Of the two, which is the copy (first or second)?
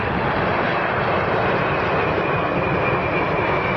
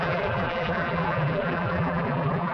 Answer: second